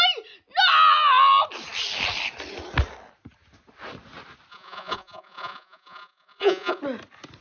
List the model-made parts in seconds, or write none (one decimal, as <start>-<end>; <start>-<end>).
4.5-6.8

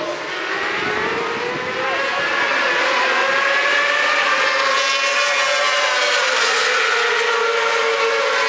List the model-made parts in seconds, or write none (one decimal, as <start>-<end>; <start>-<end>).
none

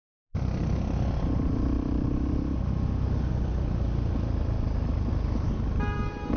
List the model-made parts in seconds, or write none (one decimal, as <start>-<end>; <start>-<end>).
none